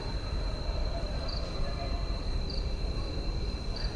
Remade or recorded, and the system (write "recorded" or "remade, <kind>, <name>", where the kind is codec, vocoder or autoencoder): remade, vocoder, BigVGAN v2